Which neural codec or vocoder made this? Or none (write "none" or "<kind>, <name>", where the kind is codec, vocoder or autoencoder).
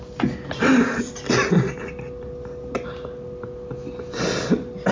none